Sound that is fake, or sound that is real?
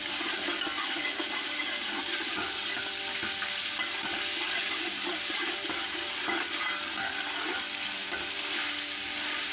real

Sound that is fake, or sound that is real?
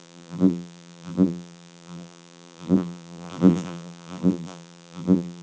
fake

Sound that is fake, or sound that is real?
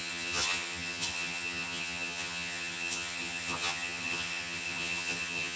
fake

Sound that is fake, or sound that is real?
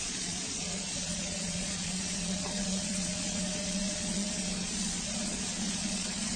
fake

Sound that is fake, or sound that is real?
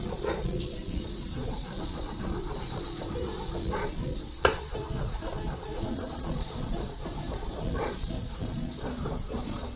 fake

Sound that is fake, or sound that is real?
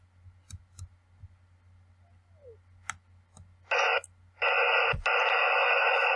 real